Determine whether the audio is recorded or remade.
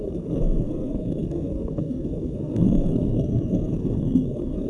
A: remade